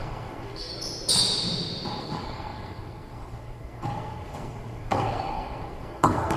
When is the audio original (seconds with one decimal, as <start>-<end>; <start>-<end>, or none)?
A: 0.7-2.0